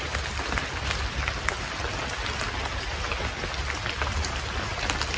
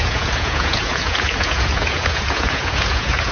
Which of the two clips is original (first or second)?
first